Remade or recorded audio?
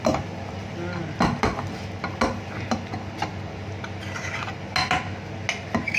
recorded